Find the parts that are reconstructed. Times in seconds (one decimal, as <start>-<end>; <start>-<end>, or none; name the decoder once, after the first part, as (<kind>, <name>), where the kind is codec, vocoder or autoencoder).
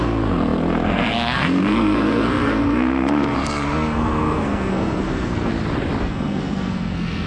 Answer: 0.0-5.5 (codec, SNAC); 6.0-7.3